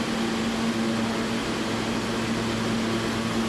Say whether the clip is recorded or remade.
recorded